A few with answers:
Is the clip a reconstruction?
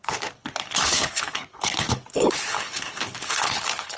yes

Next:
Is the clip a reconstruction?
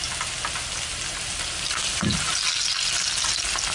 no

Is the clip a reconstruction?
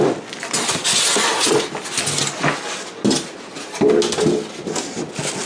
no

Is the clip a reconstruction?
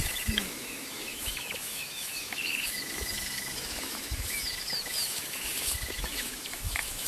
yes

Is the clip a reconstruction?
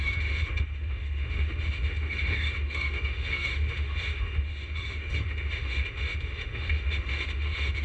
yes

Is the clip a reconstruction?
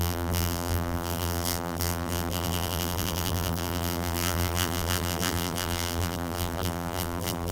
yes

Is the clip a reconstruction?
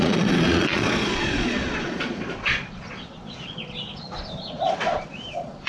yes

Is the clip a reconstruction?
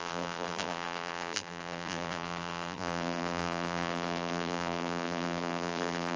yes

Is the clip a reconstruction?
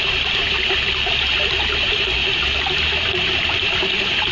no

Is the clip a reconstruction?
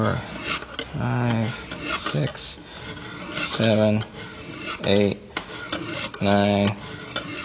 no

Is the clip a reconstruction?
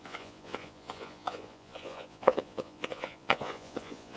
yes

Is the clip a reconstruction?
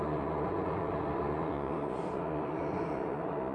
yes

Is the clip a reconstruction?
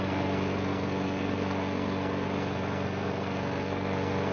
yes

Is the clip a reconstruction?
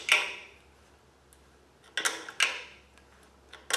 no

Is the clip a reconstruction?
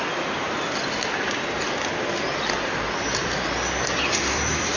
no